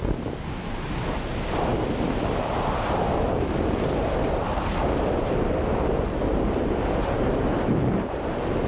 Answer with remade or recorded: recorded